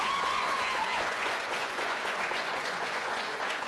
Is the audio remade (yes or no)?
yes